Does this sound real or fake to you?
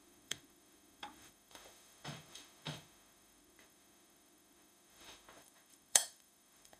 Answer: fake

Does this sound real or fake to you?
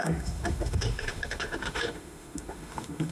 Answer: fake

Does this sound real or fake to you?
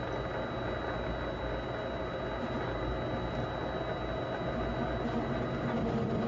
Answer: real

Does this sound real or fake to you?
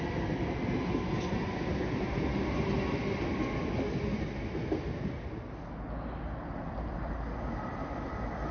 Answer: real